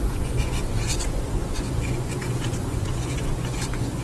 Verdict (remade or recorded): remade